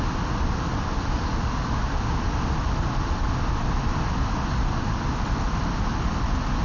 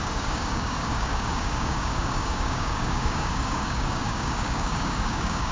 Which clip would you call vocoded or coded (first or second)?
second